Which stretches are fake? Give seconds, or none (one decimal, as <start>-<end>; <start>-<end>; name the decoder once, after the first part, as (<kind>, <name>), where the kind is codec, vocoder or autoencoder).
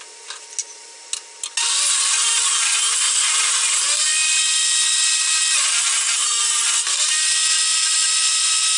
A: none